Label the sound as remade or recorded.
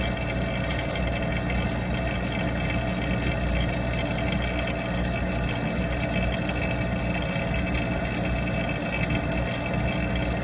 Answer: recorded